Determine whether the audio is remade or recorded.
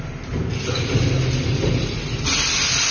recorded